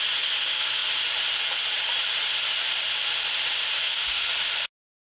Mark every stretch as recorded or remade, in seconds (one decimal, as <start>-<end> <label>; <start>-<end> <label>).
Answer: 0.0-3.8 recorded; 3.8-4.3 remade; 4.3-5.1 recorded

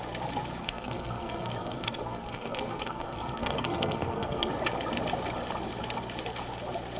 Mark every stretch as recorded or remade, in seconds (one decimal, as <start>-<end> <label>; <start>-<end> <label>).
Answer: 0.0-0.6 recorded; 0.6-4.5 remade; 4.5-7.0 recorded